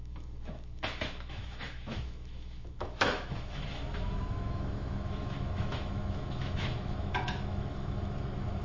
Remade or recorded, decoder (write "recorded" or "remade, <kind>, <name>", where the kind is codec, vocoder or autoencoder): remade, autoencoder, DAC-VAE